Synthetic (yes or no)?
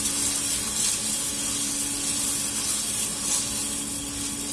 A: no